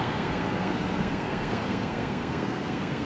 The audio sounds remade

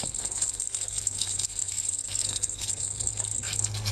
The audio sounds remade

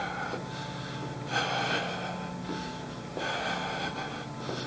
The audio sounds recorded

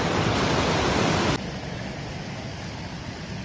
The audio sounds recorded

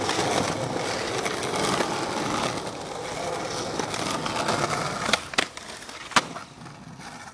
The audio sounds recorded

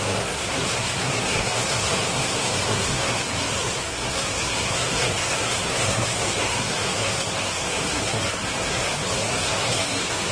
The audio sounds remade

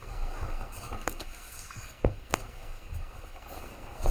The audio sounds remade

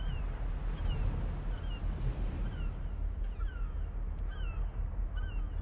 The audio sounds recorded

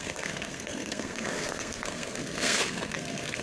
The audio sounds remade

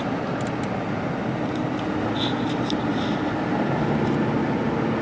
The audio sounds recorded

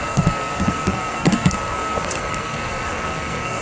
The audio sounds remade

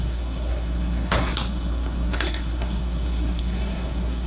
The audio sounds remade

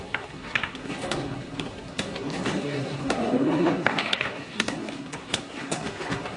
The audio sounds remade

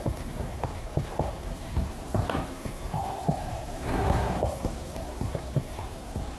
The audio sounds remade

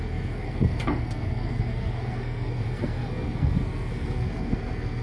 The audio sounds remade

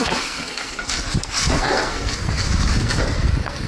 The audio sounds remade